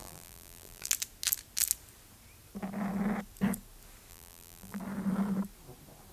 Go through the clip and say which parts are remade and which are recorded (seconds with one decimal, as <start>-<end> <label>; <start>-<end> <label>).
0.0-0.9 remade; 0.9-4.1 recorded; 4.1-4.8 remade; 4.8-6.1 recorded

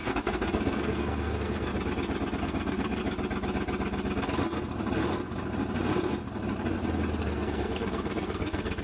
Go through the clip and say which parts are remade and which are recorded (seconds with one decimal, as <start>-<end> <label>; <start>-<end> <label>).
0.0-1.7 remade; 1.7-2.4 recorded; 2.4-3.0 remade; 3.0-7.2 recorded; 7.2-8.8 remade

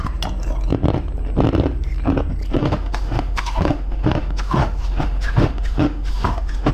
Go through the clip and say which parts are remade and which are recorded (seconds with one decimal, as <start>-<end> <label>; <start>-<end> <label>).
0.0-2.6 recorded; 2.6-6.7 remade